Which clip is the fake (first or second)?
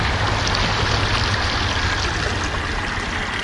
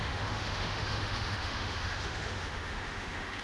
second